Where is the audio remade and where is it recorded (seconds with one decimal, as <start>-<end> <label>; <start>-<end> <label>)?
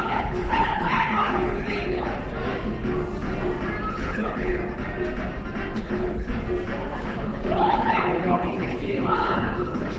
0.0-2.1 remade; 2.1-3.9 recorded; 3.9-4.6 remade; 4.6-5.8 recorded; 5.8-6.3 remade; 6.3-7.0 recorded; 7.0-10.0 remade